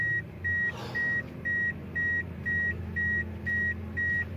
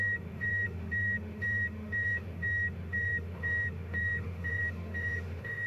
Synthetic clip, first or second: second